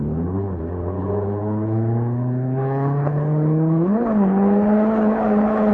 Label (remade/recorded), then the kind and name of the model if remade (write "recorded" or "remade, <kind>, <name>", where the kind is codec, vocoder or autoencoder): remade, codec, HILCodec